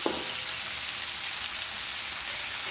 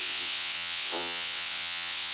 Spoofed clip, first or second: second